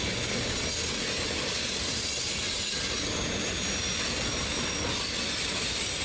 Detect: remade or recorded recorded